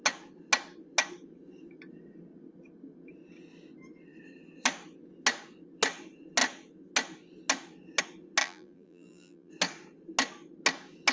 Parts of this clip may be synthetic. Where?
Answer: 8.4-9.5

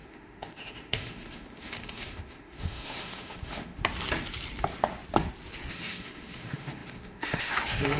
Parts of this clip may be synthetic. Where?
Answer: 0.0-3.8; 5.7-8.0

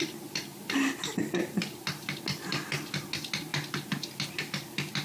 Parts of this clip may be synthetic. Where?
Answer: none

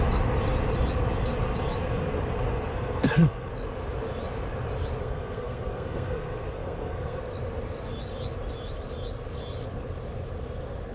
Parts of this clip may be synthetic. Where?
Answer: 2.7-3.5; 5.0-7.2